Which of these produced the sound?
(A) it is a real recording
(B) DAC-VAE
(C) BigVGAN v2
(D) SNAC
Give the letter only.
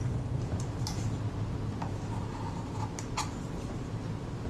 A